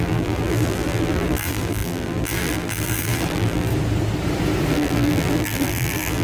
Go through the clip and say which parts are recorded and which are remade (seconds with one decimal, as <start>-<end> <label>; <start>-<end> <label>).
0.0-3.7 remade; 3.7-4.7 recorded; 4.7-6.2 remade